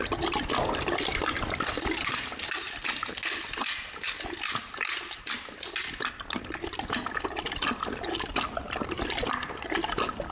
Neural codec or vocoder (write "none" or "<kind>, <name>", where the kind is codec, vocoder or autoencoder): none